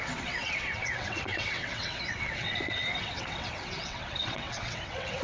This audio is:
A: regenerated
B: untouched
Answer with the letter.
A